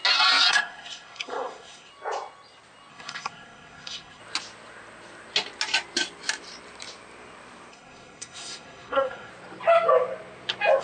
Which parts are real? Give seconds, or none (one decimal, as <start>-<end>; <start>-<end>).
0.0-0.5; 1.9-2.9; 4.2-7.7; 9.3-10.8